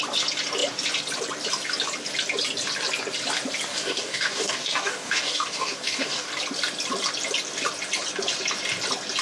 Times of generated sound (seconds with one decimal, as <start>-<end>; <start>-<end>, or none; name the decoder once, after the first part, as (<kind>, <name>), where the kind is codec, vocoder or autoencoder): 3.7-6.3 (codec, DAC)